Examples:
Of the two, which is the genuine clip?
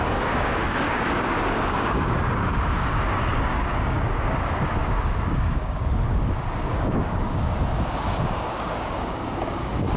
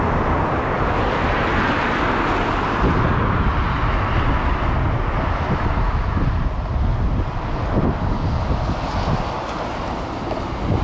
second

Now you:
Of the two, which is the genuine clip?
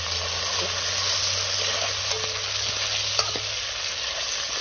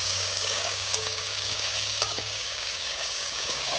first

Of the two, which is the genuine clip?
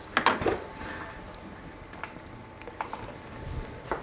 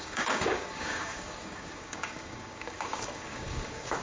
first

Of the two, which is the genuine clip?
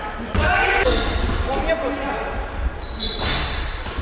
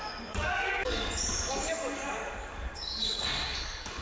first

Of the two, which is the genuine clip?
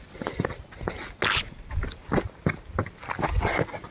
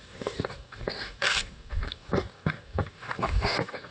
first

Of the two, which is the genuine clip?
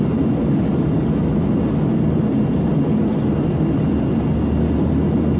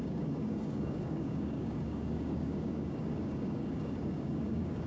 first